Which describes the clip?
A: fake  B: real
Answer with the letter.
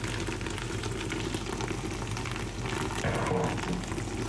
B